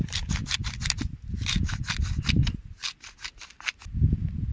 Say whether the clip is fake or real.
real